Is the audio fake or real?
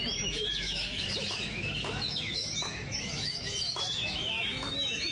fake